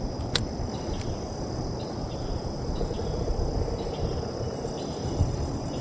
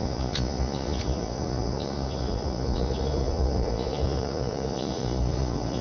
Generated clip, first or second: second